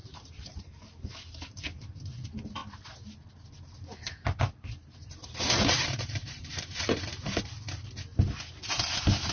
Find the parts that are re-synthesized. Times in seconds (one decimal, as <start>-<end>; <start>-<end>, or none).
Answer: 0.0-2.0; 5.2-7.4